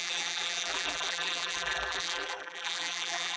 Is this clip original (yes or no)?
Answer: no